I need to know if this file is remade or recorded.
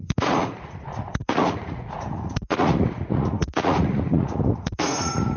remade